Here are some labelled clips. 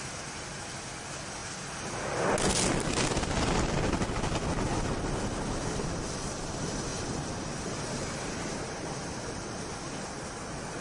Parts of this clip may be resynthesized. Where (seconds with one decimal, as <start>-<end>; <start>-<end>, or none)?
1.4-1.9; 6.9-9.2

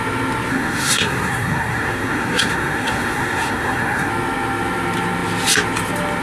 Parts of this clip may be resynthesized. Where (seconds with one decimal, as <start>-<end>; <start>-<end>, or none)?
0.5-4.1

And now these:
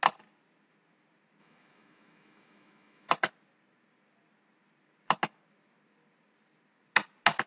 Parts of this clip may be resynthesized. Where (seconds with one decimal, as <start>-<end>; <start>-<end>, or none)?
1.4-3.1

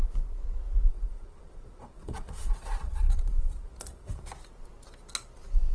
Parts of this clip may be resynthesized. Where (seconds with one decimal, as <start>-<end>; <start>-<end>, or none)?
0.9-4.3

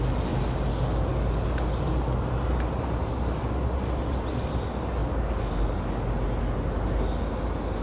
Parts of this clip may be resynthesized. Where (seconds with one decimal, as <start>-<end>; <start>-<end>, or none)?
none

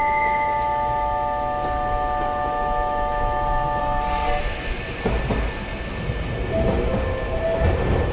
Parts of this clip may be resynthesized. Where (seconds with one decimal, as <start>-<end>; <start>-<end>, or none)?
3.8-4.4

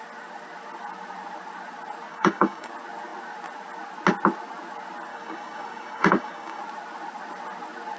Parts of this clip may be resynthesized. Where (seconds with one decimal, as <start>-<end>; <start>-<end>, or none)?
2.1-2.7; 5.1-6.6

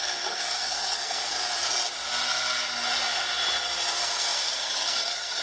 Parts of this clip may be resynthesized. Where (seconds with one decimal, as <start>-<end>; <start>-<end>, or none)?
0.0-1.3; 3.9-5.4